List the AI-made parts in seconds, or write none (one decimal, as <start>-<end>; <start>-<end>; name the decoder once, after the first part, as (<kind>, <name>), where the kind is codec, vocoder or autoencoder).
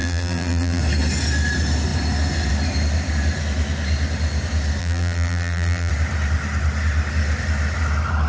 0.0-0.8 (vocoder, BigVGAN v2); 4.8-5.9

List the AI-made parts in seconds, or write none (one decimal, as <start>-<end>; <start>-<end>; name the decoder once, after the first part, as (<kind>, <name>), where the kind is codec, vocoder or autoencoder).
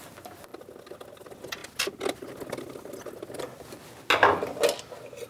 none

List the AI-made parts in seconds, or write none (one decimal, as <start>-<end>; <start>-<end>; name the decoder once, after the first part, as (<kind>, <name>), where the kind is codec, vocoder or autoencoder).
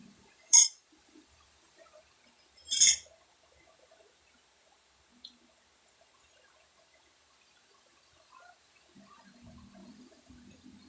0.0-2.0 (vocoder, BigVGAN v2); 9.8-10.3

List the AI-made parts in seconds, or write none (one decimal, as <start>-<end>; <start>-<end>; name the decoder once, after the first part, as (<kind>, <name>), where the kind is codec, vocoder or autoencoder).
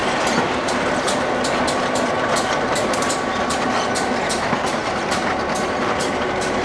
none